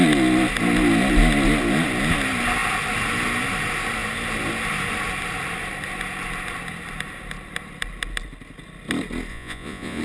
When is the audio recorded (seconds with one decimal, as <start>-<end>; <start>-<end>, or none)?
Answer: 0.0-9.3